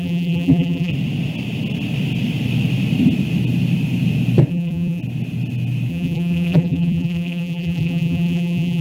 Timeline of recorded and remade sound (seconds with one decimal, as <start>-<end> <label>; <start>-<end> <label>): 0.0-0.9 remade; 0.9-4.5 recorded; 4.5-5.0 remade; 5.0-5.9 recorded; 5.9-8.8 remade